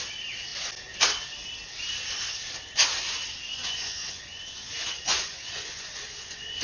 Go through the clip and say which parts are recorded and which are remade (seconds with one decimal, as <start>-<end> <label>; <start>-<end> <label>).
0.0-3.5 recorded; 3.5-6.6 remade